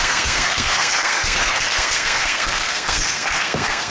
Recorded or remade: remade